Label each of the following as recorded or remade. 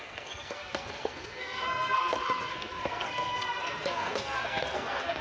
remade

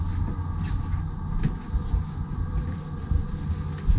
recorded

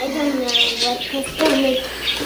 recorded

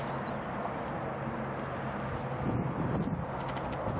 recorded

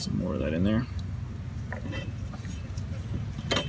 recorded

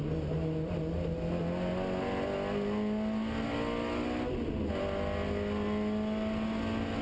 recorded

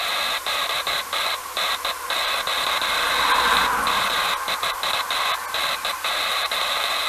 recorded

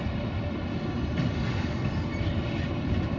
recorded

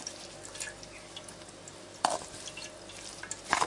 recorded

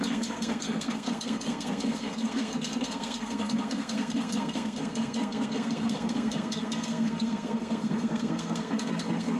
remade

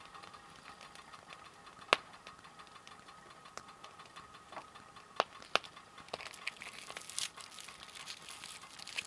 recorded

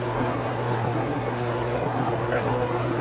remade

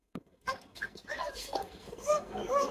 remade